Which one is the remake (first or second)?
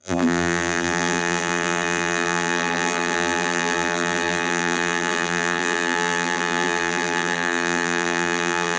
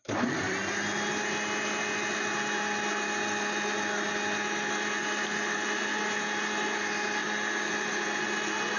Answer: first